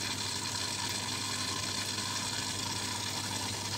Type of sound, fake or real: real